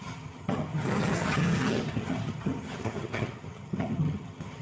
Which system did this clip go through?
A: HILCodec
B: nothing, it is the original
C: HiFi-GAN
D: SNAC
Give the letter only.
C